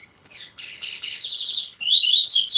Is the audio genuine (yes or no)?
no